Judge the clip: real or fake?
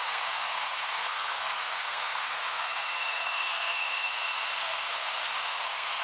fake